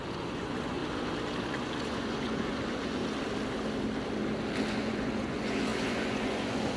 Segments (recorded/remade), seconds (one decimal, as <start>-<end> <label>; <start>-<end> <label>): 0.0-0.8 remade; 0.8-1.5 recorded; 1.5-3.0 remade; 3.0-4.7 recorded; 4.7-6.8 remade